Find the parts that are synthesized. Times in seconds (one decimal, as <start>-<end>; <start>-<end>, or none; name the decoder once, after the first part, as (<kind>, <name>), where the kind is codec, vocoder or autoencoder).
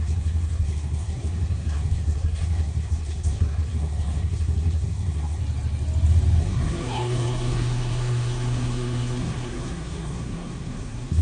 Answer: 0.0-5.4 (codec, SNAC); 6.4-11.2